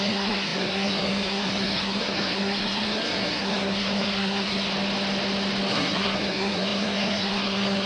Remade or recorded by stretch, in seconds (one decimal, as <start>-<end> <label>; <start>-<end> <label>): 0.0-4.7 remade; 4.7-5.7 recorded; 5.7-7.9 remade

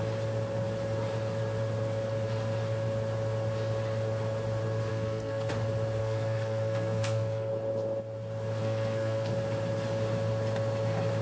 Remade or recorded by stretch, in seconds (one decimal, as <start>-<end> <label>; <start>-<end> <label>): 0.0-4.9 recorded; 4.9-5.5 remade; 5.5-6.0 recorded; 6.0-7.5 remade; 7.5-8.6 recorded; 8.6-9.3 remade; 9.3-11.2 recorded